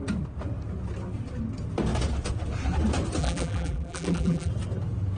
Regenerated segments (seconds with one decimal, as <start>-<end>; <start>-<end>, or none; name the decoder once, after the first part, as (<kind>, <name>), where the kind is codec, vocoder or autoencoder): 3.2-4.5 (vocoder, BigVGAN v2)